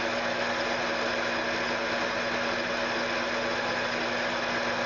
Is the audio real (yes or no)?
yes